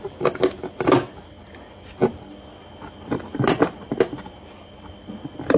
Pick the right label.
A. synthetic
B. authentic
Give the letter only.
B